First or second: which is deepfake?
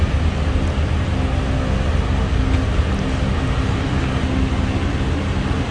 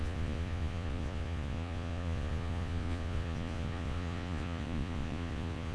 second